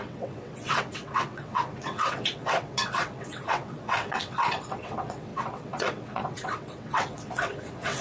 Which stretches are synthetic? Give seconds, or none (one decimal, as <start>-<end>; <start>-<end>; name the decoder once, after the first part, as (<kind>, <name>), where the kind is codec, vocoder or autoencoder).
0.0-8.0 (vocoder, WaveNeXt)